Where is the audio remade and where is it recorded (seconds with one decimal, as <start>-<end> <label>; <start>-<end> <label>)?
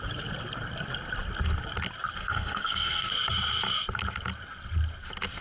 0.0-2.2 recorded; 2.2-3.1 remade; 3.1-5.4 recorded